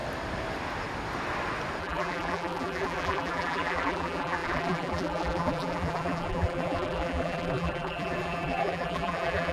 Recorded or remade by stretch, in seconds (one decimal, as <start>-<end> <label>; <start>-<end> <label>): 0.0-1.8 recorded; 1.8-9.5 remade